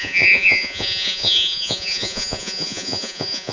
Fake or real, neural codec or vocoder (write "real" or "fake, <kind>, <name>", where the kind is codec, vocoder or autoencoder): fake, vocoder, Vocos